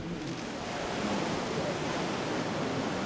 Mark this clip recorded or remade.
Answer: recorded